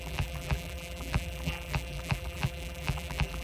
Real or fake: fake